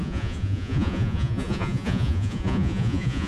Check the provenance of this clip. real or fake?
fake